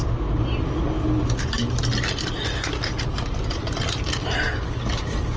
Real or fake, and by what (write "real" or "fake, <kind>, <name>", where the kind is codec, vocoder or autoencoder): real